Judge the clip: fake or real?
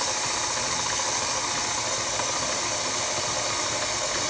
real